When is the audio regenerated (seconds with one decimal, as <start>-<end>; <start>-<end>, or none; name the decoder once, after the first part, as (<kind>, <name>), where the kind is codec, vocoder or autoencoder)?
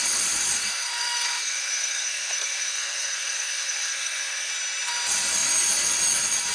0.6-4.5 (codec, SNAC)